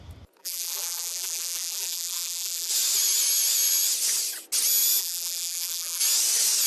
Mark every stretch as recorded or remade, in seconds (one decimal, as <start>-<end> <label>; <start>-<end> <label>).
0.0-0.4 recorded; 0.4-2.7 remade; 2.7-5.0 recorded; 5.0-6.0 remade; 6.0-6.7 recorded